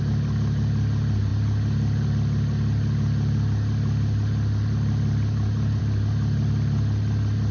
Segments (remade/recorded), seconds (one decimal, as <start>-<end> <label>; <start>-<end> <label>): 0.0-7.5 recorded